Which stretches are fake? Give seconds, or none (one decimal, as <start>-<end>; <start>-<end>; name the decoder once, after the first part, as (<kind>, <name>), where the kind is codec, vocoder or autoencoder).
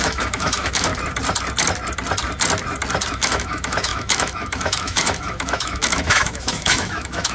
0.0-0.9 (autoencoder, DAC-VAE); 3.1-7.3